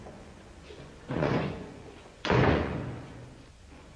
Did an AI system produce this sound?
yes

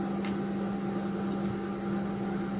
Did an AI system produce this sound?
no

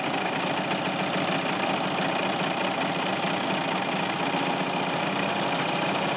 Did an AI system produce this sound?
no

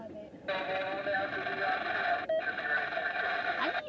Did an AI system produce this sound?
no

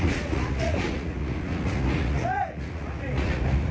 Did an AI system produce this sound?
yes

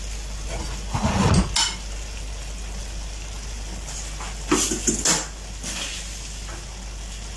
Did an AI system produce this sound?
no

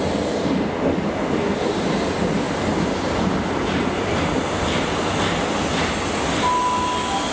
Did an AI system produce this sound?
no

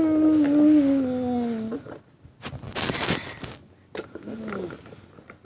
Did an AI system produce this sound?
no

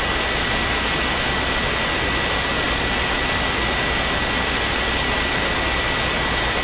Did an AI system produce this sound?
no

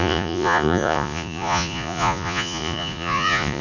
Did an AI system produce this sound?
yes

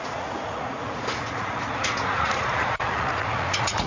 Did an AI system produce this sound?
yes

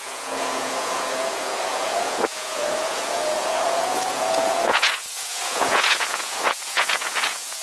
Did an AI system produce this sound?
yes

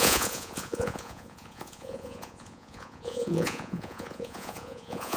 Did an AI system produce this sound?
yes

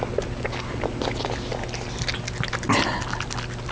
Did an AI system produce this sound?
no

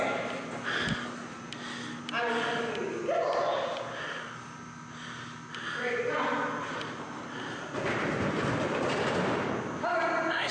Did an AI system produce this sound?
no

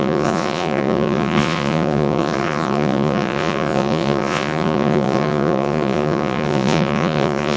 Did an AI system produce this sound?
yes